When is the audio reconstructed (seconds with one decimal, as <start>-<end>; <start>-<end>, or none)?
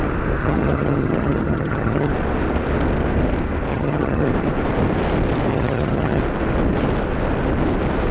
0.4-2.1; 3.7-4.3; 5.5-6.2